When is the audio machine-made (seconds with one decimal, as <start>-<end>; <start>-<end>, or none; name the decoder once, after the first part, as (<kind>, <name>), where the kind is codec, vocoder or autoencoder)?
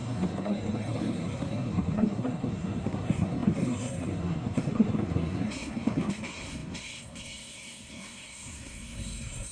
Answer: 0.0-9.5 (codec, SNAC)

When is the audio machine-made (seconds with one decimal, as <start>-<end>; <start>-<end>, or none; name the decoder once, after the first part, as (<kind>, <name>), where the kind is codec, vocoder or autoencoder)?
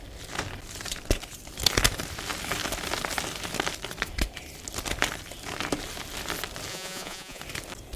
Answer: 6.7-7.4 (vocoder, Vocos)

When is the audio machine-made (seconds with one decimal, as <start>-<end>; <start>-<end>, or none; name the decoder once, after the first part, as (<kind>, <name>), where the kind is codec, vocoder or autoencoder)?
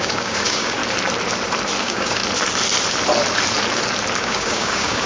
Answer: 0.0-0.8 (codec, DAC); 1.8-2.2; 4.2-5.1